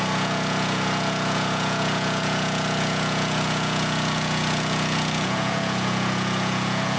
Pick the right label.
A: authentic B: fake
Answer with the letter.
B